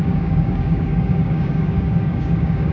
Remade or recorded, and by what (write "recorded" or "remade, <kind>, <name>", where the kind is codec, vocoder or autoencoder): remade, codec, DAC